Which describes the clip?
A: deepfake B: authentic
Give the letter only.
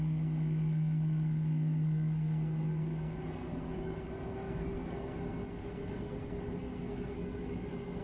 A